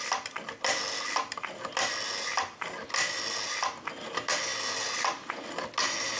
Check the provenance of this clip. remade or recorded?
recorded